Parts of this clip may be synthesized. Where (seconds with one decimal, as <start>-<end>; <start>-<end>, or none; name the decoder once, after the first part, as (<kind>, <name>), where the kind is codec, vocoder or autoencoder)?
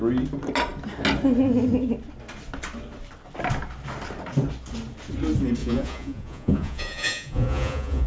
5.6-8.1 (vocoder, Vocos)